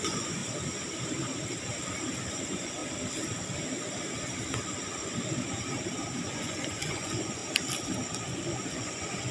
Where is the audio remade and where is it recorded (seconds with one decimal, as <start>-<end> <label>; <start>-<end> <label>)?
0.0-0.4 remade; 0.4-2.3 recorded; 2.3-2.8 remade; 2.8-6.2 recorded; 6.2-7.4 remade; 7.4-8.2 recorded; 8.2-9.3 remade